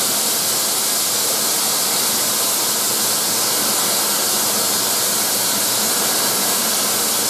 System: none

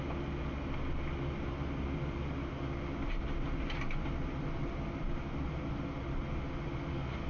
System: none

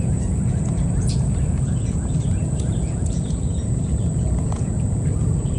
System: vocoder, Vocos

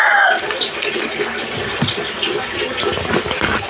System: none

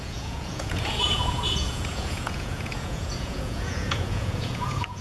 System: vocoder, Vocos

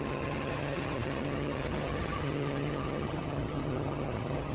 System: vocoder, HiFi-GAN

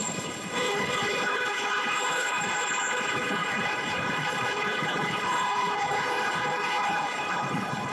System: codec, HILCodec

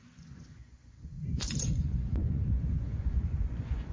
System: vocoder, Vocos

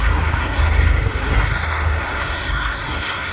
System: codec, SNAC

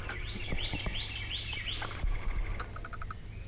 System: none